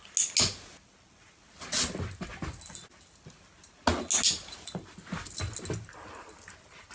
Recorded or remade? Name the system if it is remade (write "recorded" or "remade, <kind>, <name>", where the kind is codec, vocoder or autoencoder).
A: recorded